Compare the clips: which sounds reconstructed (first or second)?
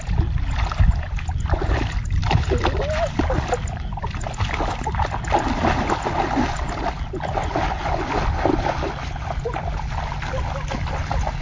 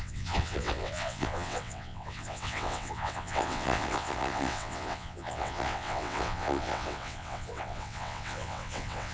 second